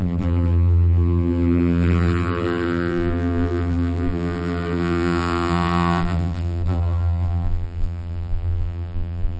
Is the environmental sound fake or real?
fake